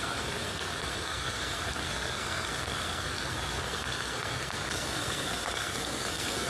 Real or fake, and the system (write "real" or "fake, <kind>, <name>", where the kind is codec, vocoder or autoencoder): fake, codec, SNAC